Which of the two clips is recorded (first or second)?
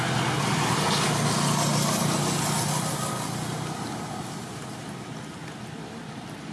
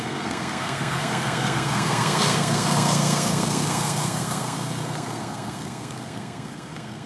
first